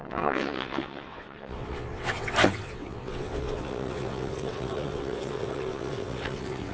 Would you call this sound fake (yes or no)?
yes